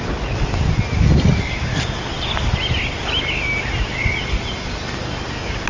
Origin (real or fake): real